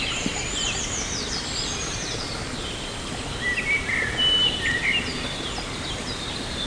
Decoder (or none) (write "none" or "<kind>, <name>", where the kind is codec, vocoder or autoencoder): none